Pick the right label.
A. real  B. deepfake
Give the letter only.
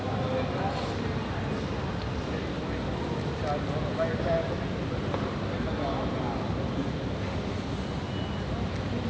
A